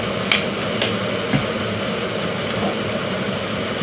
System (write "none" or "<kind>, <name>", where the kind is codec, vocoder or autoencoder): none